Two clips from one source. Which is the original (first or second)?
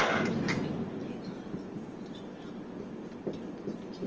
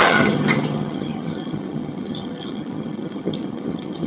first